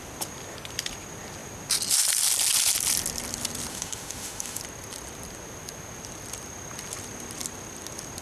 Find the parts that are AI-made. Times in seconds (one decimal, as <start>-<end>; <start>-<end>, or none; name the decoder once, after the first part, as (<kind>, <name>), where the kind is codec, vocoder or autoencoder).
3.7-4.6 (autoencoder, DAC-VAE)

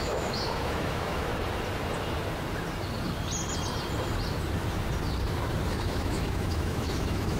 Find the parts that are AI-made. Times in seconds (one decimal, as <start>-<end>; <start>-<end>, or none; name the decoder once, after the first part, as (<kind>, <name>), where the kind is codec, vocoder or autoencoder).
0.0-1.3 (autoencoder, DAC-VAE); 5.7-7.4

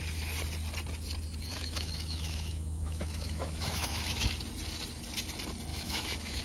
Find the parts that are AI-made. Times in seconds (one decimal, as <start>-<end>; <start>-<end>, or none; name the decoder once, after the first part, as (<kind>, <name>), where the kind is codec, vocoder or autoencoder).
1.5-4.3 (autoencoder, DAC-VAE); 5.7-6.4

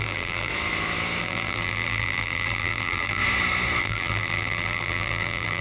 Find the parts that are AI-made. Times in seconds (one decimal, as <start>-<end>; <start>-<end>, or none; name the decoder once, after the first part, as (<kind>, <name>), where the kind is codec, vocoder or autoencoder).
0.0-0.5 (vocoder, BigVGAN v2); 1.2-3.2; 3.8-5.6

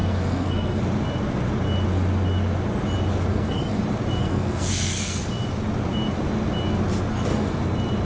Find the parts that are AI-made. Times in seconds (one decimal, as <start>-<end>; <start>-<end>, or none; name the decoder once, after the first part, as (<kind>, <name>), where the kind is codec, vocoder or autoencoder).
0.0-0.8 (codec, SNAC); 3.3-3.8; 4.2-5.2; 7.1-7.6

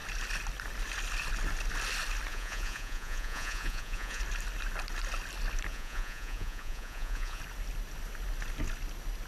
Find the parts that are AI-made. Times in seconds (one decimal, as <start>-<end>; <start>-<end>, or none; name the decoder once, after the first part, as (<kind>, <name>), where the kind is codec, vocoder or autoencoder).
2.3-4.2 (vocoder, Vocos); 5.7-7.4

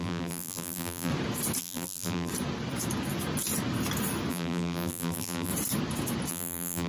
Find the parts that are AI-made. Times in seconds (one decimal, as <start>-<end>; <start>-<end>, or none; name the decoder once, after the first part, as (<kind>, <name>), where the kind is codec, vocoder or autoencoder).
0.0-1.1 (vocoder, BigVGAN v2); 1.6-2.3; 4.3-5.5; 6.3-6.9

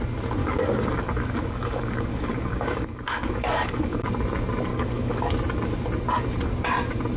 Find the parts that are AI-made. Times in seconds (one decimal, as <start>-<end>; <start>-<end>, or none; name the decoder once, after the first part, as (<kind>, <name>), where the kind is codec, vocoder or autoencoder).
0.4-4.1 (codec, DAC); 4.7-5.3